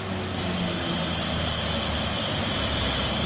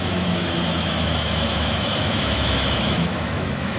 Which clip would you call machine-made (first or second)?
second